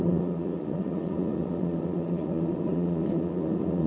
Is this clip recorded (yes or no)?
no